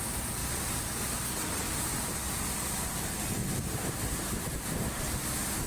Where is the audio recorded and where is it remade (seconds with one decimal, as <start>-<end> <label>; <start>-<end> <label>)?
0.0-3.4 remade; 3.4-4.0 recorded; 4.0-5.7 remade